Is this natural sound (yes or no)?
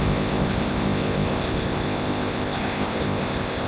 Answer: no